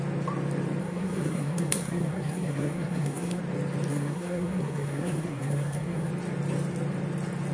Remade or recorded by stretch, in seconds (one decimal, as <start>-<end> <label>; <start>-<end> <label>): 0.0-0.8 recorded; 0.8-3.4 remade; 3.4-3.9 recorded; 3.9-6.1 remade; 6.1-7.5 recorded

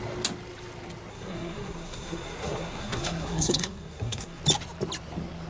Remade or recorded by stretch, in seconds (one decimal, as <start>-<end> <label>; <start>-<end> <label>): 0.0-1.1 recorded; 1.1-4.4 remade; 4.4-5.5 recorded

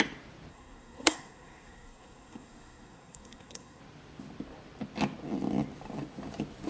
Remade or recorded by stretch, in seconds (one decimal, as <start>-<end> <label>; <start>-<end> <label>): 0.0-0.5 recorded; 0.5-3.8 remade; 3.8-6.7 recorded

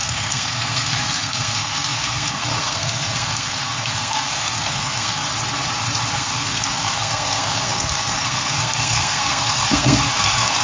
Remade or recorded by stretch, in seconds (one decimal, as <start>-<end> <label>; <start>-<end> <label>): 0.0-5.2 remade; 5.2-6.1 recorded; 6.1-10.6 remade

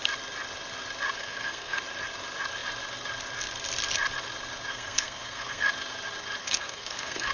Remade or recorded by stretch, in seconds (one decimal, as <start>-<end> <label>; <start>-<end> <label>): 0.0-1.2 recorded; 1.2-1.8 remade; 1.8-4.7 recorded; 4.7-5.7 remade; 5.7-6.4 recorded; 6.4-7.3 remade